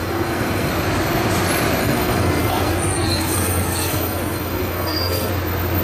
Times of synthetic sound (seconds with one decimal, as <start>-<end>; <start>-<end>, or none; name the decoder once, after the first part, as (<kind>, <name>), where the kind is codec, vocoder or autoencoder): 0.0-0.7 (codec, SNAC); 1.8-5.3